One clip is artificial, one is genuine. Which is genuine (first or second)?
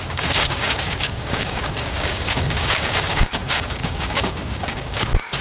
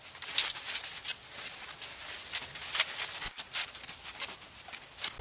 second